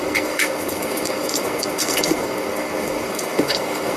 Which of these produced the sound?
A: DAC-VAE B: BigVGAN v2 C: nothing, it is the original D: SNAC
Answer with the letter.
D